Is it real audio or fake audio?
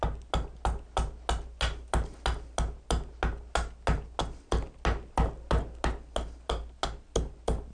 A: real